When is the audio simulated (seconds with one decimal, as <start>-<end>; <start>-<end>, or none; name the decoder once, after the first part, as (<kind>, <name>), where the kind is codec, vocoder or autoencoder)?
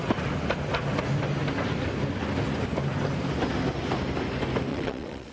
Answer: 4.7-5.3 (vocoder, WaveNeXt)